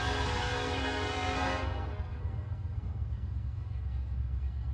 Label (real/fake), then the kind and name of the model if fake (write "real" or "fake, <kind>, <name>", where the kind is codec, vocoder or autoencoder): fake, codec, SNAC